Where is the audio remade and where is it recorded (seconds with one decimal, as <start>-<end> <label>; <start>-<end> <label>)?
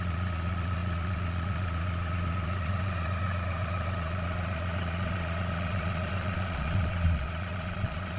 0.0-8.2 remade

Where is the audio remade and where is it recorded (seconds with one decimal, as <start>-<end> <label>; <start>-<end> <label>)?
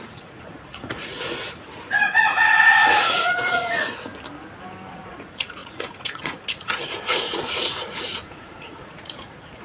0.0-4.1 remade; 4.1-4.9 recorded; 4.9-9.6 remade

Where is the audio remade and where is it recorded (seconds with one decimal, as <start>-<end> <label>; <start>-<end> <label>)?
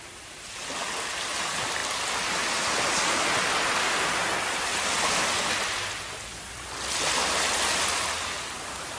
0.0-9.0 recorded